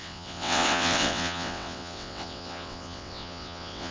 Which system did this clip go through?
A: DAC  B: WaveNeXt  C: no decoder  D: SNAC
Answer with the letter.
B